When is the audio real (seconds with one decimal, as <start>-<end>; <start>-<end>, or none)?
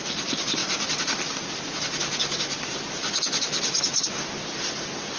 0.0-5.2